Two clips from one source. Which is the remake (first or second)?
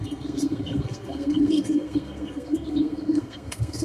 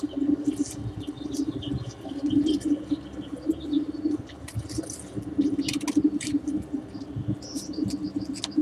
first